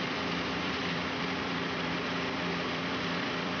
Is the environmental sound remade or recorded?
remade